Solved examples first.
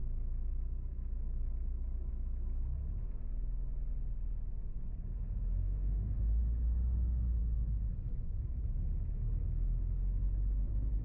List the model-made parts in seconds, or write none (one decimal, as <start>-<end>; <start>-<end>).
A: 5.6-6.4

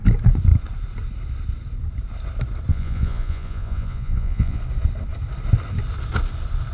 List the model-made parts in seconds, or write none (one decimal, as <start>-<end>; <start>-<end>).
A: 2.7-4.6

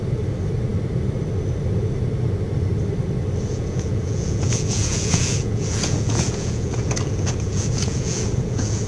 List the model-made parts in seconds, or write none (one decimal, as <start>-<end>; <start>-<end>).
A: 3.5-8.9

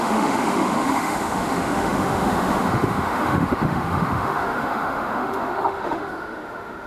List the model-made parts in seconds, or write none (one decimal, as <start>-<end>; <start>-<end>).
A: 0.0-6.9

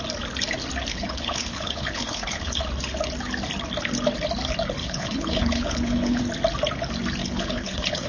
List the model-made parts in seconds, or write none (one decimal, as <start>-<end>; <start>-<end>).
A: 0.9-2.6; 4.8-6.2; 7.2-8.1